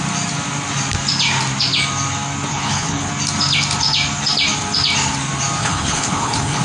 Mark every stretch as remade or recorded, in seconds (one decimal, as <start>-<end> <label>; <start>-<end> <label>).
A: 0.0-2.5 recorded; 2.5-3.1 remade; 3.1-5.6 recorded; 5.6-6.6 remade

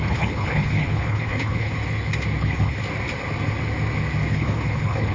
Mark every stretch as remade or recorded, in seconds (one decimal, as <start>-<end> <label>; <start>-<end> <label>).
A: 0.0-1.7 remade; 1.7-2.4 recorded; 2.4-2.8 remade; 2.8-4.3 recorded; 4.3-5.1 remade

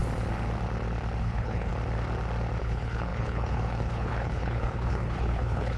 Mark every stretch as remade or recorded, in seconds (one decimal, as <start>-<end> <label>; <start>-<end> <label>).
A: 0.0-1.2 recorded; 1.2-1.7 remade; 1.7-2.6 recorded; 2.6-5.8 remade

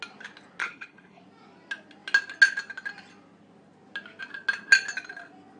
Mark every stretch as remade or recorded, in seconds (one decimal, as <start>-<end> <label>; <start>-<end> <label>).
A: 0.0-0.6 recorded; 0.6-1.2 remade; 1.2-5.6 recorded

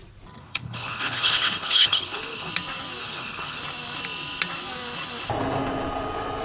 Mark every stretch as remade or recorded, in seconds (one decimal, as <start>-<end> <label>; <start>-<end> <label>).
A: 0.0-0.4 recorded; 0.4-2.5 remade; 2.5-3.0 recorded; 3.0-3.6 remade; 3.6-6.4 recorded

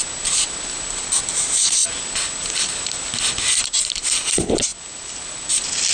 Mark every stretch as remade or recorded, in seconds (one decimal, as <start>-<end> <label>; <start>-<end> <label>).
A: 0.0-5.9 recorded

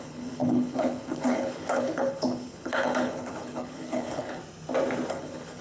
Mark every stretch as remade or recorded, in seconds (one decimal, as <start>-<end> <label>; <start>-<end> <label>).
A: 0.0-4.4 remade; 4.4-5.1 recorded; 5.1-5.6 remade

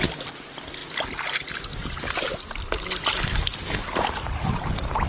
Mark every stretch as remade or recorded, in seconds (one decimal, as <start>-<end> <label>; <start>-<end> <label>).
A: 0.0-5.1 recorded